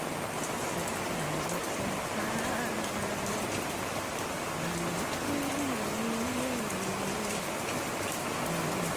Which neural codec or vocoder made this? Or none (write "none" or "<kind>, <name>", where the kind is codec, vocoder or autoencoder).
none